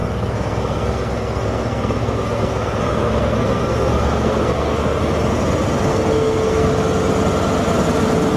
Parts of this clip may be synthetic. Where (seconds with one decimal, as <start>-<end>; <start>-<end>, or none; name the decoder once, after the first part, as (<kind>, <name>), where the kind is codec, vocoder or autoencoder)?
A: 0.0-5.0 (codec, SNAC); 5.9-6.7